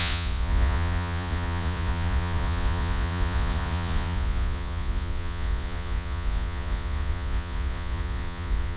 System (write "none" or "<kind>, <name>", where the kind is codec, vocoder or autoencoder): vocoder, Vocos